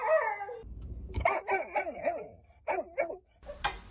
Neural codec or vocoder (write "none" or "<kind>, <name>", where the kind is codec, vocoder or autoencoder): none